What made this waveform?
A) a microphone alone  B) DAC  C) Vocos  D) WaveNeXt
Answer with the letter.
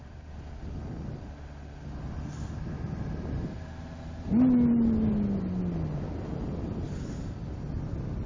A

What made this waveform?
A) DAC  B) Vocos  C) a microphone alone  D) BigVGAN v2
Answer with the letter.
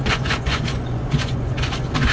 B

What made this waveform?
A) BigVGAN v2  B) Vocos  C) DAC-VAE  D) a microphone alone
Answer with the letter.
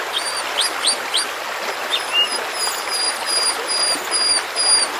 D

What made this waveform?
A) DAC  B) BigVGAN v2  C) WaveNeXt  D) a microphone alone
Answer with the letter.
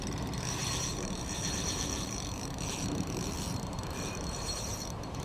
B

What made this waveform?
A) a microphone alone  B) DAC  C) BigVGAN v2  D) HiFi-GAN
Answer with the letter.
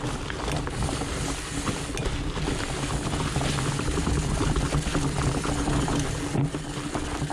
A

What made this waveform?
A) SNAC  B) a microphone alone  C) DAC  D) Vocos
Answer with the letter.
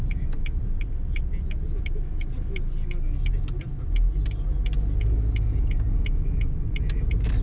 B